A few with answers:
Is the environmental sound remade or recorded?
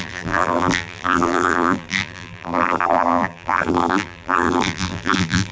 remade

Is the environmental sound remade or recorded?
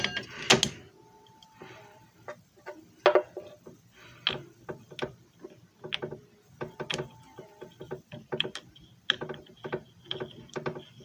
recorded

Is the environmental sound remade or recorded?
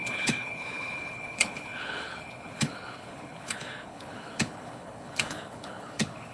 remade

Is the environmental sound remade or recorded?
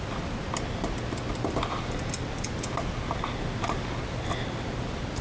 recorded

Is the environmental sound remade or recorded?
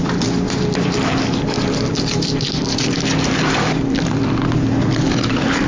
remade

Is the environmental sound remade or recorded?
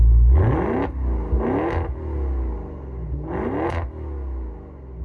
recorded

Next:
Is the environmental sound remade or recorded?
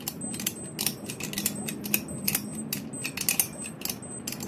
recorded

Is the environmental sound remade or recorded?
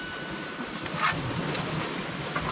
recorded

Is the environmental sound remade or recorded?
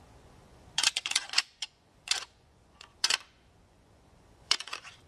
remade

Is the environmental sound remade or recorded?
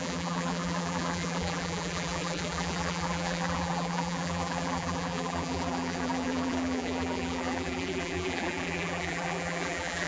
remade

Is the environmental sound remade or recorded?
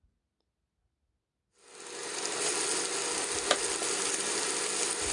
recorded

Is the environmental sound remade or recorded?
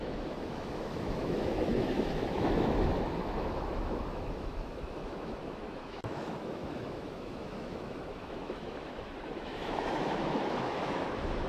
remade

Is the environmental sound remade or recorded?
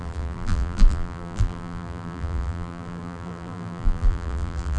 remade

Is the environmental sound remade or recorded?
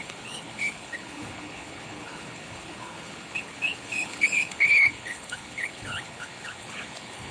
remade